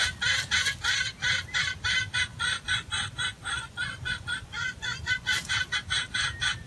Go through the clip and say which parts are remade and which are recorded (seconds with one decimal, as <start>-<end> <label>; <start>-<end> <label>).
0.0-2.3 recorded; 2.3-5.5 remade; 5.5-6.7 recorded